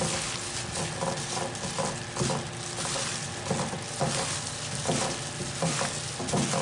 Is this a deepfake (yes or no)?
no